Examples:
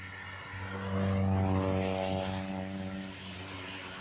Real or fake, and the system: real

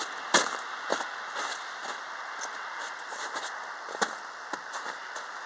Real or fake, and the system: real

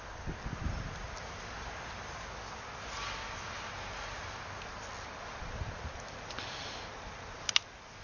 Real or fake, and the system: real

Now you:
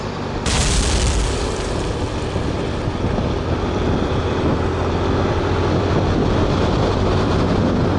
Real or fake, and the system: real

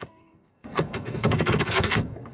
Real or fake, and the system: fake, codec, SNAC